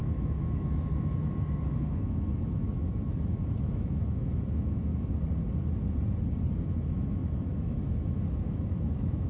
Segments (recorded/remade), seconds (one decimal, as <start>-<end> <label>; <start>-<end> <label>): 0.0-4.9 remade; 4.9-6.6 recorded; 6.6-9.3 remade